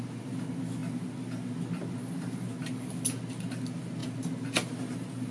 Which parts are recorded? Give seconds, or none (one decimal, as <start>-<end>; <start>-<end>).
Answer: 0.0-5.3